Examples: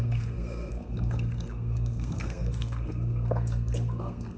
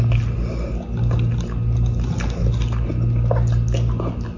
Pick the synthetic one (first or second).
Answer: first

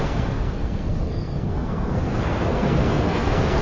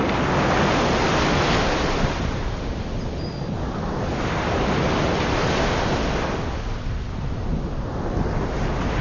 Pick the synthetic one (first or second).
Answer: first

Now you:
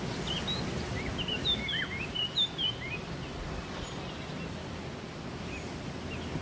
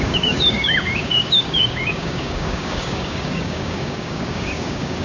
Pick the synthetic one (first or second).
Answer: second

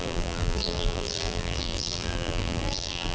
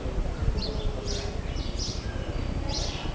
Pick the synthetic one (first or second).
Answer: first